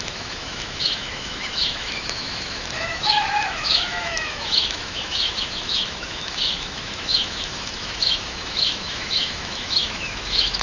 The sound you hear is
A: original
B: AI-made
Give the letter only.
B